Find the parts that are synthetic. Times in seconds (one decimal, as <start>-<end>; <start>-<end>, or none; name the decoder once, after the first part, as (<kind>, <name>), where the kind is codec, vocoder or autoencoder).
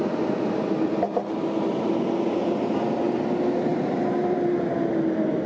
2.4-3.0 (vocoder, BigVGAN v2); 3.7-4.6